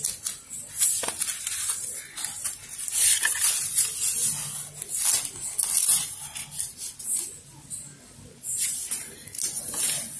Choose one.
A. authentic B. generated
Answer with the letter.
A